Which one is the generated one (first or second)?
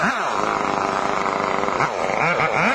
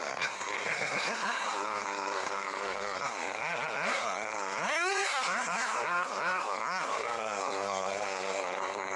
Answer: second